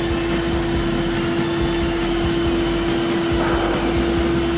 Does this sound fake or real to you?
real